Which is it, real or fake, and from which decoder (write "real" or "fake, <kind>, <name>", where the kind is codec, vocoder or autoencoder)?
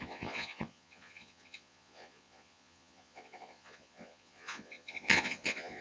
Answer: fake, vocoder, Vocos